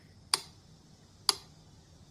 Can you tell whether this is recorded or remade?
recorded